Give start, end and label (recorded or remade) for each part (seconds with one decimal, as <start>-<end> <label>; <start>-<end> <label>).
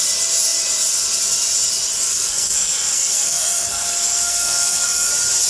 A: 0.0-2.1 recorded; 2.1-5.1 remade; 5.1-5.5 recorded